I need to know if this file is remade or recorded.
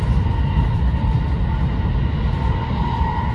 recorded